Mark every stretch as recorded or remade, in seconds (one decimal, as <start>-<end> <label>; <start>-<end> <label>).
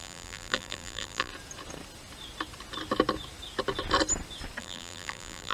0.0-1.3 remade; 1.3-4.6 recorded; 4.6-5.5 remade